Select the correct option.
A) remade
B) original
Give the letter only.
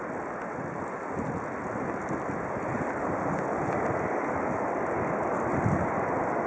B